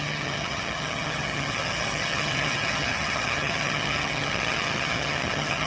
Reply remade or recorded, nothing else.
remade